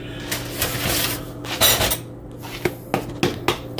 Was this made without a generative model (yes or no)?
yes